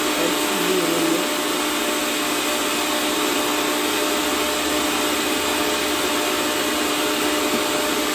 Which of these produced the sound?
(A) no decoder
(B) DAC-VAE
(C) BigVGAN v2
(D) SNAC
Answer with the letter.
A